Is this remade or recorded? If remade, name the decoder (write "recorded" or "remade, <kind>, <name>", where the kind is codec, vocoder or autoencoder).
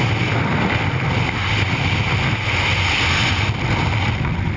recorded